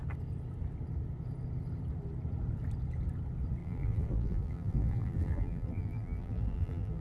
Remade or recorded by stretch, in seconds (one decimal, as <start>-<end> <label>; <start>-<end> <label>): 0.0-3.6 recorded; 3.6-7.0 remade